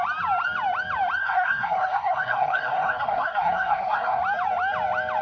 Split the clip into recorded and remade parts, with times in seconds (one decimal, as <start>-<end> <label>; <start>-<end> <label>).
0.0-1.2 recorded; 1.2-4.2 remade; 4.2-5.2 recorded